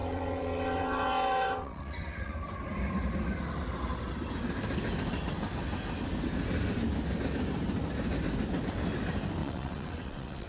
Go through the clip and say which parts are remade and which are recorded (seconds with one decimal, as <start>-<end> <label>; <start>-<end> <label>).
0.0-2.3 remade; 2.3-9.4 recorded; 9.4-10.5 remade